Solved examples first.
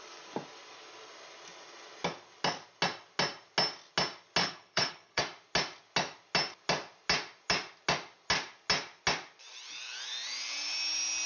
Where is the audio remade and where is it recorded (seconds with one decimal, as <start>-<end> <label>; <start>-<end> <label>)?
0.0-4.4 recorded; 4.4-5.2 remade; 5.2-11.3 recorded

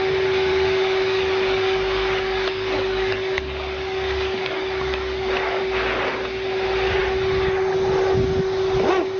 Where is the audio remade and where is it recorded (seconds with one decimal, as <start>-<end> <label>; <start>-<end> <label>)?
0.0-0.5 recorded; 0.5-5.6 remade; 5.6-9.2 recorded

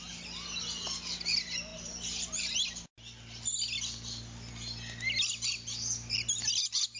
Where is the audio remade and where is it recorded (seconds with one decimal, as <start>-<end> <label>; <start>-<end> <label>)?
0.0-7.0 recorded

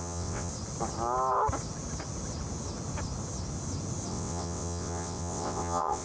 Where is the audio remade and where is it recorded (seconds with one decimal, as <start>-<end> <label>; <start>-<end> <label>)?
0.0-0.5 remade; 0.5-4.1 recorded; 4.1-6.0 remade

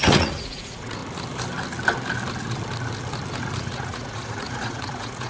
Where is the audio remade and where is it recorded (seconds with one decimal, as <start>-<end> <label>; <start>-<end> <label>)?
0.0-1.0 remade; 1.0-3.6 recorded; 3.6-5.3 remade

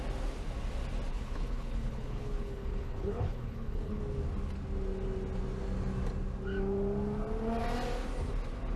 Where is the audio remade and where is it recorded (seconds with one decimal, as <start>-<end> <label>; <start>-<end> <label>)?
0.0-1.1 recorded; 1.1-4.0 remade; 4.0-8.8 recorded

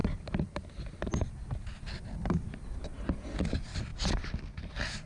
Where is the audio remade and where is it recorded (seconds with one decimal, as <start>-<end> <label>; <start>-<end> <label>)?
0.0-5.1 recorded